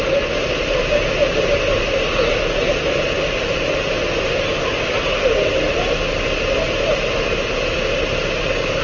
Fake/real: real